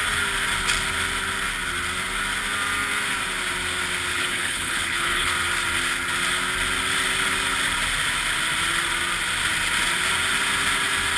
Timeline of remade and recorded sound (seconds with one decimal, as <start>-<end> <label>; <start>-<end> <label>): 0.0-4.1 recorded; 4.1-5.3 remade; 5.3-11.2 recorded